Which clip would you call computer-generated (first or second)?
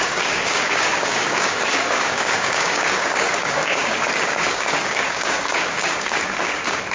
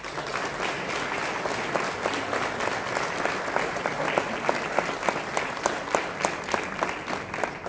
first